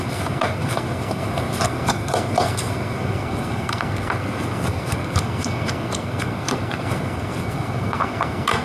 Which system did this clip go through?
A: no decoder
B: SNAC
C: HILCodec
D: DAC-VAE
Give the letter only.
B